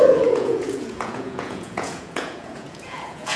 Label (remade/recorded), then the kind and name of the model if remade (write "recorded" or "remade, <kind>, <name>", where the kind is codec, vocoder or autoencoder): remade, vocoder, Vocos